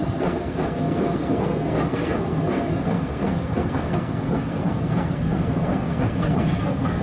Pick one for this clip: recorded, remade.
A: remade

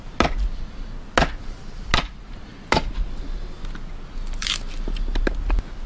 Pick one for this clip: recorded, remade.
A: recorded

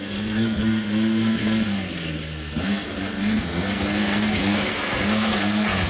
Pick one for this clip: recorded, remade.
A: remade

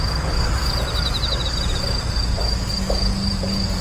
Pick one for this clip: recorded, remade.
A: recorded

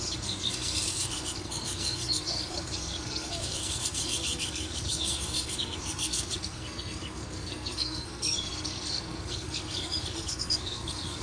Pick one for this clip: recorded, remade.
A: remade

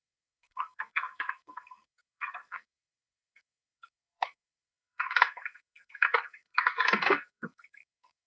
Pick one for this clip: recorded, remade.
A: remade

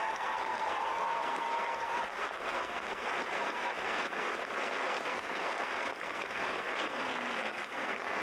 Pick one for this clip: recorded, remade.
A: remade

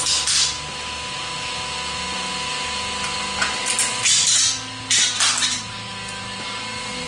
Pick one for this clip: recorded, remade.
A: recorded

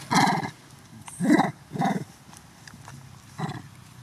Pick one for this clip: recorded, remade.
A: recorded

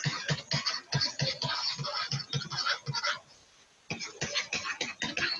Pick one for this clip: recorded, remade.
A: recorded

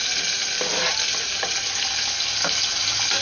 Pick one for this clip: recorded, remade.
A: recorded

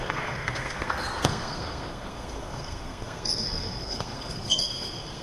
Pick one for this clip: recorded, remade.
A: remade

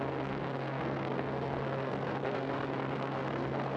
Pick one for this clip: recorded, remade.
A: remade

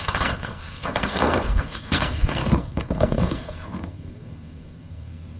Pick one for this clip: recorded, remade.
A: remade